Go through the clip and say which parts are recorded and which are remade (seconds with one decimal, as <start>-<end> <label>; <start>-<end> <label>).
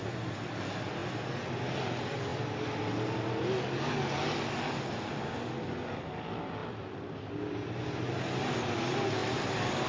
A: 0.0-9.2 recorded; 9.2-9.9 remade